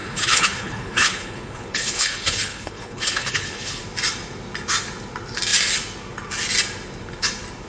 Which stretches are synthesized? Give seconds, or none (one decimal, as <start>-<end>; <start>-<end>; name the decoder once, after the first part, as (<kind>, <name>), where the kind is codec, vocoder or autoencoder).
0.0-3.8 (codec, HILCodec)